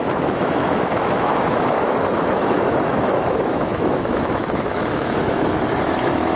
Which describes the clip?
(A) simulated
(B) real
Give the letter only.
A